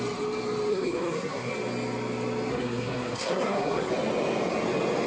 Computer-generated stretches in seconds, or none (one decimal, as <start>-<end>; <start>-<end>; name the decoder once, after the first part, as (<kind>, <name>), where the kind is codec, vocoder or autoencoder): 0.7-1.5 (codec, SNAC); 2.5-3.9